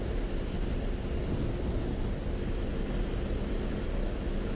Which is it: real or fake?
real